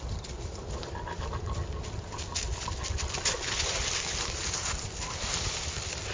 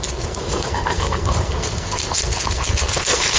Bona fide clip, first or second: first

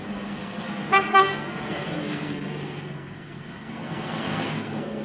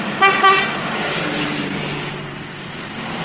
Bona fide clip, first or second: second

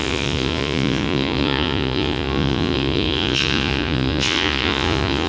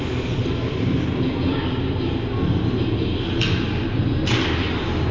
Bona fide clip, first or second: second